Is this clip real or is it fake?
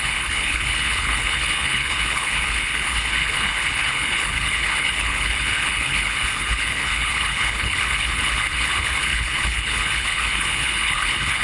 fake